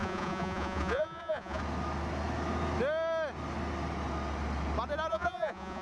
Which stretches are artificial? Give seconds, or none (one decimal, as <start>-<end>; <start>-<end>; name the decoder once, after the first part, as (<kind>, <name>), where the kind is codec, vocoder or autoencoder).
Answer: 0.0-1.6 (vocoder, Vocos); 5.1-5.8